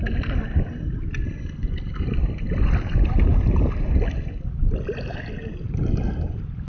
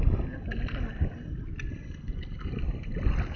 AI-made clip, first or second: first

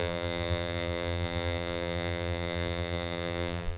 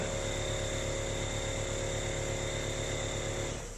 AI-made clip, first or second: first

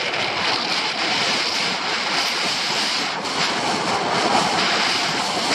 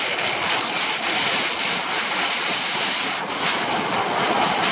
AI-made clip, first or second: first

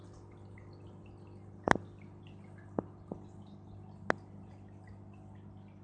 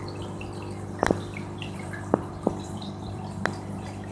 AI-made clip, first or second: second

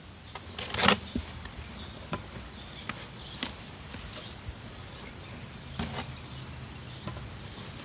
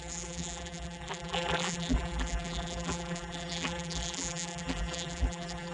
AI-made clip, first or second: second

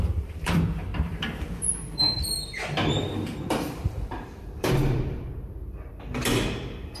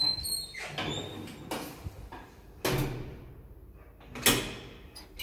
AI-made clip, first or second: first